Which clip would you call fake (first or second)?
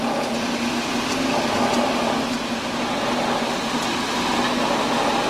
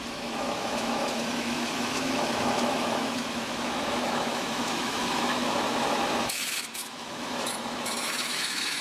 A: second